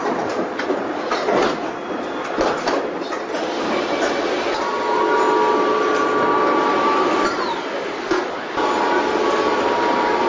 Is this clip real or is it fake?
real